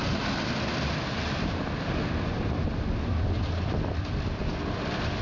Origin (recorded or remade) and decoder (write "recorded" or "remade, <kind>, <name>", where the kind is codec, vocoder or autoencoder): recorded